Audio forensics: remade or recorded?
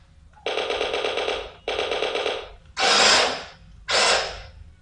recorded